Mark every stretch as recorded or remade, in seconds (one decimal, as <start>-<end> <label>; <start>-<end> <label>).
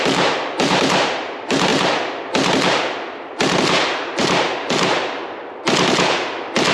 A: 0.0-1.7 remade; 1.7-3.8 recorded; 3.8-5.2 remade; 5.2-6.7 recorded